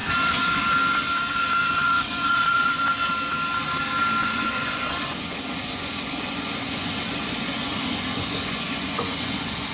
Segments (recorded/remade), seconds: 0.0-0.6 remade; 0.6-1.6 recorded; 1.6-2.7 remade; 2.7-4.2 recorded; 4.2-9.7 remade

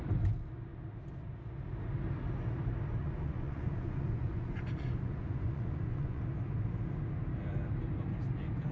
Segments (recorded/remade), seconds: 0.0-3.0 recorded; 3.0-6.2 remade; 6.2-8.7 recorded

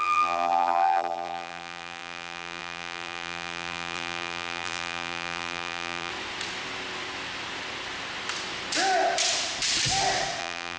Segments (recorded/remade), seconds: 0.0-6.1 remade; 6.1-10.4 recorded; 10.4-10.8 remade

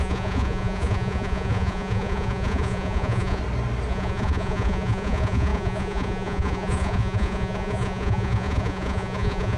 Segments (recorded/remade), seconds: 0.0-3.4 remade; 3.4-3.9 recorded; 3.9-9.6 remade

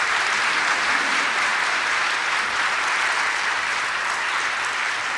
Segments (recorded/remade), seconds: 0.0-5.2 recorded

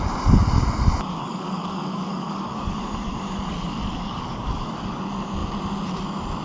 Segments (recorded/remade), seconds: 0.0-1.2 recorded; 1.2-5.0 remade; 5.0-6.4 recorded